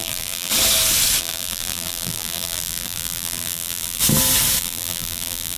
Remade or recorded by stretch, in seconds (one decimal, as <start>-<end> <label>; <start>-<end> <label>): 0.0-0.5 remade; 0.5-1.2 recorded; 1.2-4.0 remade; 4.0-4.6 recorded; 4.6-5.6 remade